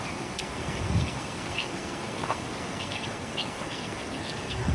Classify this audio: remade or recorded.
remade